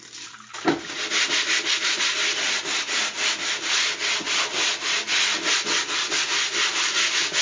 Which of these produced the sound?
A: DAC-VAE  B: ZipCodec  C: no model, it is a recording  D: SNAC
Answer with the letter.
C